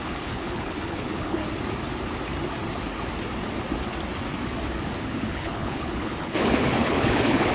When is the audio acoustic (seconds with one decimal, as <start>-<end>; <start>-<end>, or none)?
1.4-5.0